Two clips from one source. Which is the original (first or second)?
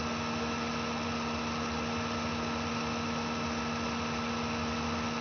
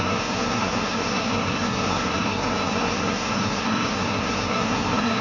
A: first